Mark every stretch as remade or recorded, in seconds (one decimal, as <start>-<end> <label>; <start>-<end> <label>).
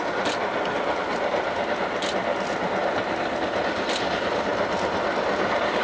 0.0-5.8 recorded